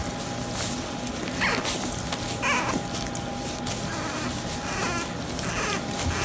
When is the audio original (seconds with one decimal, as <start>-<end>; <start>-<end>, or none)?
0.0-6.2